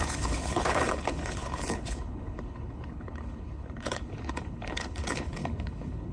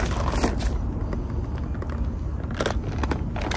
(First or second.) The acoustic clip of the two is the second